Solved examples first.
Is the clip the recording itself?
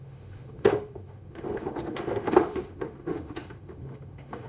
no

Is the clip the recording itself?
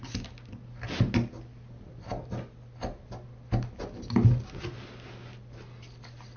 yes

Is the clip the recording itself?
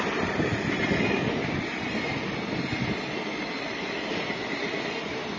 yes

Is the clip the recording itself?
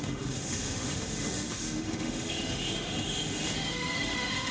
no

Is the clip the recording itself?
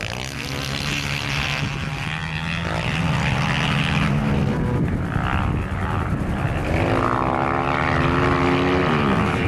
yes